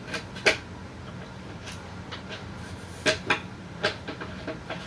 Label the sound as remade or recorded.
recorded